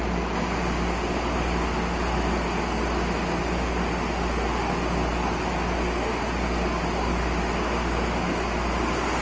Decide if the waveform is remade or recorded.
recorded